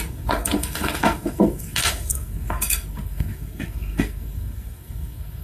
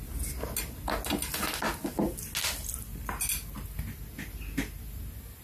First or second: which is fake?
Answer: first